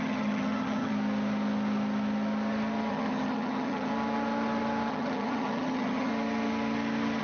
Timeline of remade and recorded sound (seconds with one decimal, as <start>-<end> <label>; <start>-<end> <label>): 0.0-0.9 remade; 0.9-2.9 recorded; 2.9-3.9 remade; 3.9-4.9 recorded; 4.9-6.1 remade; 6.1-7.2 recorded